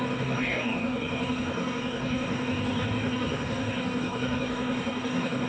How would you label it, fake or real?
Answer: fake